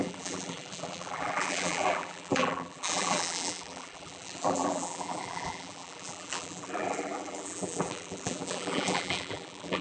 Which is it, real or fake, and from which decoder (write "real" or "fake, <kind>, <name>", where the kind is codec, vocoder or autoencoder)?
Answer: fake, vocoder, BigVGAN v2